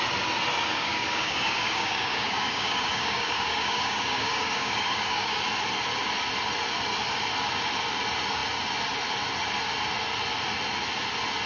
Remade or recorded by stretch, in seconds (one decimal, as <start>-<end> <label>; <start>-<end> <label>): 0.0-0.7 recorded; 0.7-5.4 remade; 5.4-11.5 recorded

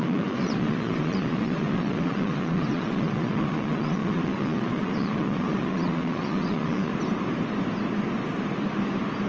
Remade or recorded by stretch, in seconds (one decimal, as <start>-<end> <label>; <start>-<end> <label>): 0.0-6.9 remade; 6.9-9.3 recorded

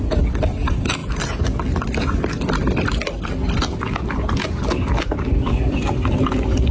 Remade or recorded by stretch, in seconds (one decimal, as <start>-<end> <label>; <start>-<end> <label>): 0.0-6.7 recorded

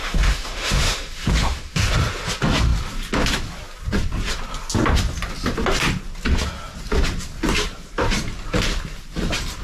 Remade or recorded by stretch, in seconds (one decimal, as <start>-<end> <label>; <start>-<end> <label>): 0.0-1.9 remade; 1.9-9.6 recorded

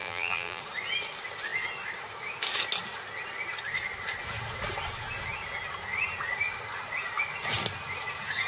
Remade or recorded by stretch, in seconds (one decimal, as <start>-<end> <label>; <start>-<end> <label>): 0.0-0.6 remade; 0.6-8.5 recorded

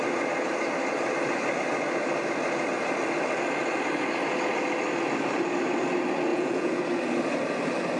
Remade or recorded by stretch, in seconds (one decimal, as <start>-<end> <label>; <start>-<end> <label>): 0.0-6.3 recorded; 6.3-6.8 remade; 6.8-8.0 recorded

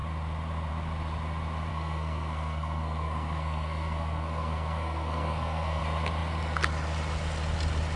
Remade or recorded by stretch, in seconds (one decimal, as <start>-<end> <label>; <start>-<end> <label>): 0.0-1.7 recorded; 1.7-5.8 remade; 5.8-8.0 recorded

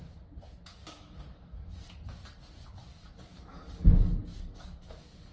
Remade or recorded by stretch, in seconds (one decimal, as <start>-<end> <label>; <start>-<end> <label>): 0.0-0.8 recorded; 0.8-1.8 remade; 1.8-2.9 recorded; 2.9-5.3 remade